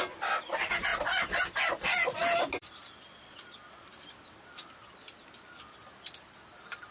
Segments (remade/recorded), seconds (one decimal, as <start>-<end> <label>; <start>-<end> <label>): 0.0-6.9 recorded